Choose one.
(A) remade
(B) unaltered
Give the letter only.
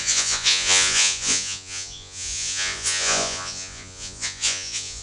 A